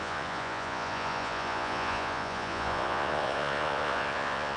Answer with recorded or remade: remade